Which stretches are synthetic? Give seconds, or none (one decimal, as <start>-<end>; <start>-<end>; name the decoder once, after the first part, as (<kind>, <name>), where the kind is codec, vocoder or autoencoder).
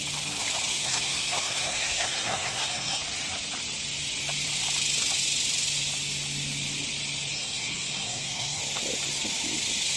0.7-3.0 (codec, SNAC); 7.3-8.6